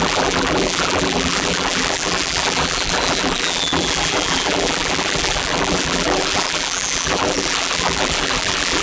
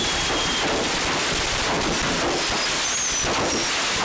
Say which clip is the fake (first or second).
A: first